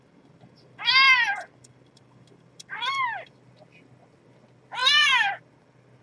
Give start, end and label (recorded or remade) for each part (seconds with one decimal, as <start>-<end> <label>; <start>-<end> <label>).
0.0-6.0 recorded